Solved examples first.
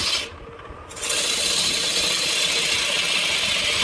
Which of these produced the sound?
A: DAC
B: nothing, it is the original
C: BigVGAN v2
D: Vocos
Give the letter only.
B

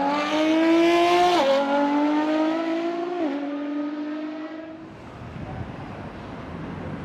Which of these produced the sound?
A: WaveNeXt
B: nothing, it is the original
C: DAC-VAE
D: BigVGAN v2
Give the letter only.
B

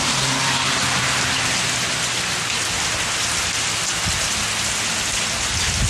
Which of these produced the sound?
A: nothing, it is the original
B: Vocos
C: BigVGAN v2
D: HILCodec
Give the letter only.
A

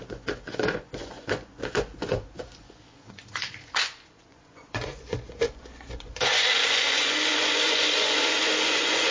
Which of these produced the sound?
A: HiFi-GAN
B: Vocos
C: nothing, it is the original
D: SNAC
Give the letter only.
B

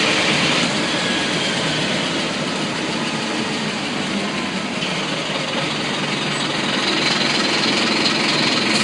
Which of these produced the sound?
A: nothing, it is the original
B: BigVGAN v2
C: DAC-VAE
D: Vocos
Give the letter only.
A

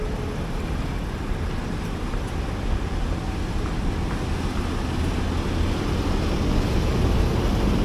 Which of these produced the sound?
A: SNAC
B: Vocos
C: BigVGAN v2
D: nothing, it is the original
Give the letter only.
D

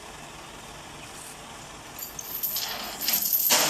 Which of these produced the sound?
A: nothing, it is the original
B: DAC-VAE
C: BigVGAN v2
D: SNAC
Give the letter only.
A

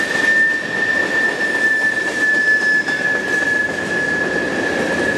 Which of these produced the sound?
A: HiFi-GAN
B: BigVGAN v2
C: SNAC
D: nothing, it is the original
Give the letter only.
D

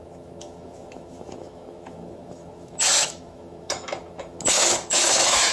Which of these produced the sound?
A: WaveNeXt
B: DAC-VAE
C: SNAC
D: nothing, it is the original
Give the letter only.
B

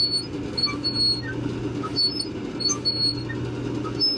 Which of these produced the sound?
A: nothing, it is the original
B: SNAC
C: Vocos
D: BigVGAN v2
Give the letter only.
A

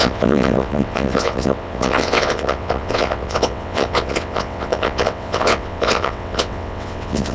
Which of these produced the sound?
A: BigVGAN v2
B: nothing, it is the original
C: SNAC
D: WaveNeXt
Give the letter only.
D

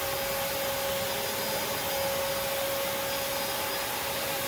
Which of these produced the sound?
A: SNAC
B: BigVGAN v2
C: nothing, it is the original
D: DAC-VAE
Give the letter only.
C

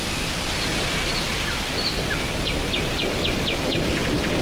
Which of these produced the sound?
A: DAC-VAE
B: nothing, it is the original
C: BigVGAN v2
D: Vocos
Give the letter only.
B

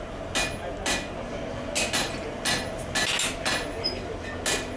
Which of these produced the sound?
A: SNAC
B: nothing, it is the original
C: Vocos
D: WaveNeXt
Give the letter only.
B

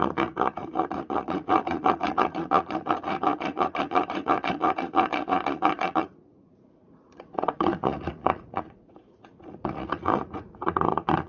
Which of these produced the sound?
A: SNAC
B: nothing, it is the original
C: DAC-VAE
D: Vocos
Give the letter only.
D